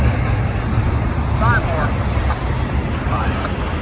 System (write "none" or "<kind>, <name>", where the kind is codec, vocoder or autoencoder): none